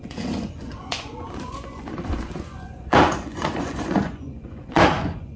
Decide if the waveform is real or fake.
fake